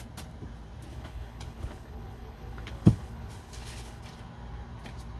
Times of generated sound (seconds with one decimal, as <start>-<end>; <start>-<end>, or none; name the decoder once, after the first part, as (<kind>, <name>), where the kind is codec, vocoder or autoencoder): 0.9-4.0 (codec, HILCodec)